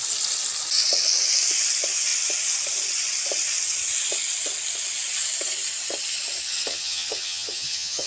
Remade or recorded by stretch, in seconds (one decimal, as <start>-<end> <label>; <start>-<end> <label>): 0.0-6.7 recorded; 6.7-8.1 remade